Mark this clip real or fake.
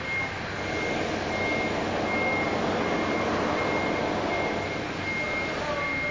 real